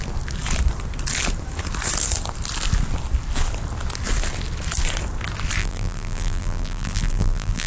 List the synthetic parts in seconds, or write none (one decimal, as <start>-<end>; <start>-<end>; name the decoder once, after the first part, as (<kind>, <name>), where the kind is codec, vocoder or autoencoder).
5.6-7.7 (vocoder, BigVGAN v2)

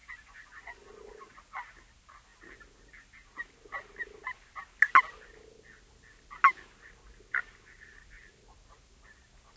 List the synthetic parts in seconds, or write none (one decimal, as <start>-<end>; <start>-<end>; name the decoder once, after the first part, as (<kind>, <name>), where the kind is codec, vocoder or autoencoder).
0.0-1.4 (vocoder, Vocos)

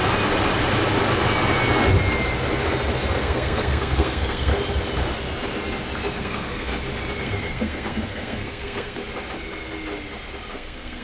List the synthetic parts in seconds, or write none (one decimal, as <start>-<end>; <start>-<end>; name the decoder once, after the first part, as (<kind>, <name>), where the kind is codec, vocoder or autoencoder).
3.2-4.5 (codec, SNAC); 6.2-6.7; 7.2-9.0; 10.5-11.0

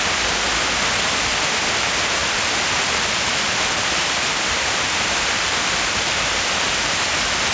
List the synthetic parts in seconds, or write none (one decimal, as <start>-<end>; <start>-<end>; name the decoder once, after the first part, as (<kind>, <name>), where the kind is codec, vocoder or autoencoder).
none

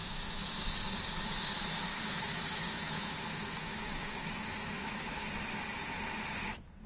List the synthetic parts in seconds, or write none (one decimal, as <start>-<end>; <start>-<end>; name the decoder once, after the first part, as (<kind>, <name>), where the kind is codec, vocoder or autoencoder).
0.0-0.7 (autoencoder, DAC-VAE); 1.9-5.3

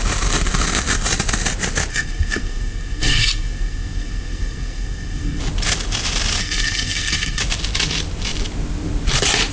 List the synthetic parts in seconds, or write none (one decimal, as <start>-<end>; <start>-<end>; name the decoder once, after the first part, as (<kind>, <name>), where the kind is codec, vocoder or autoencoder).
1.9-5.4 (codec, SNAC); 6.4-7.4

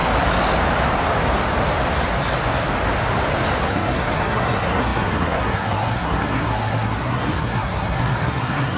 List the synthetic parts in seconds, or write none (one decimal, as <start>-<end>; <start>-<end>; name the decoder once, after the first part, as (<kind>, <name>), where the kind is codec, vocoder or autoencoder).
3.6-8.8 (codec, SNAC)